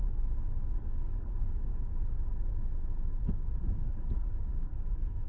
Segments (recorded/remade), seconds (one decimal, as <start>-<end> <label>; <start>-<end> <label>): 0.0-0.8 recorded; 0.8-1.7 remade; 1.7-3.6 recorded; 3.6-5.3 remade